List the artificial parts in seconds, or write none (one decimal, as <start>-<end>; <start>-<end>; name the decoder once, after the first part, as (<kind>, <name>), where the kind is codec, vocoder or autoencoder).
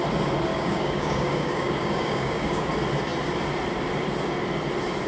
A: 0.5-2.7 (codec, DAC)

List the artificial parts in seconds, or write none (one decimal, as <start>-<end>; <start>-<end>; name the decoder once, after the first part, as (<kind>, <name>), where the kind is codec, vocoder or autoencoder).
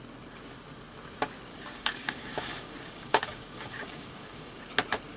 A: 1.5-4.6 (codec, DAC)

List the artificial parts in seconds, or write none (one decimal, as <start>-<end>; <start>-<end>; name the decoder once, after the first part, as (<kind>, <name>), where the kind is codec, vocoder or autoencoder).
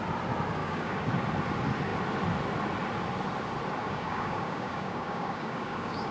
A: 0.6-1.1 (codec, DAC); 3.8-6.1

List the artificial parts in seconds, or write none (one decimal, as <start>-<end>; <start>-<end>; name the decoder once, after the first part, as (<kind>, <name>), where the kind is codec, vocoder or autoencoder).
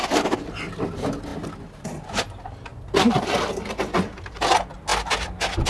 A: none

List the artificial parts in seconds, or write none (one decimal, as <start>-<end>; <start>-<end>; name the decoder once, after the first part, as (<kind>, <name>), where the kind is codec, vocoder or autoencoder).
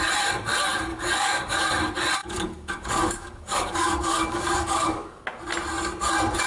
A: 0.9-1.7 (codec, DAC); 2.2-5.2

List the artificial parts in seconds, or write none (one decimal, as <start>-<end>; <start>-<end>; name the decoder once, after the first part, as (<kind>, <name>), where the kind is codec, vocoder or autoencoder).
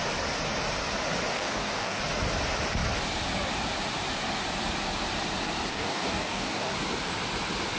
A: 1.3-2.0 (codec, DAC); 5.7-6.7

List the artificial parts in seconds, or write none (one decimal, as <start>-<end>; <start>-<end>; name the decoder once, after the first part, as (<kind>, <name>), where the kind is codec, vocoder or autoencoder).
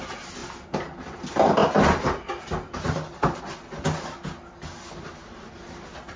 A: none